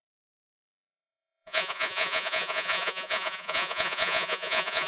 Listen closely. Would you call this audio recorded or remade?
remade